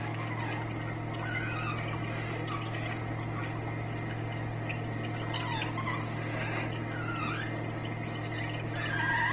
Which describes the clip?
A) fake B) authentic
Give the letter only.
B